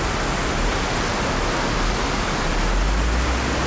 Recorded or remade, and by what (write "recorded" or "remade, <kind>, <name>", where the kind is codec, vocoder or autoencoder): recorded